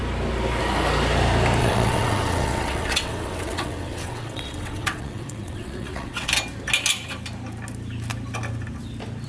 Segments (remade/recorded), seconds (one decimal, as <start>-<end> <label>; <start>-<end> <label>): 0.0-1.6 recorded; 1.6-6.3 remade; 6.3-9.3 recorded